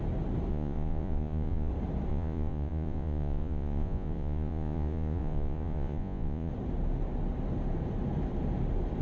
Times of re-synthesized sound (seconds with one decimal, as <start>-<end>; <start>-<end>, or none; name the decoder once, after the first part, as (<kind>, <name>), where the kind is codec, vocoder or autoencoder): 0.5-1.7 (vocoder, Vocos); 2.1-6.5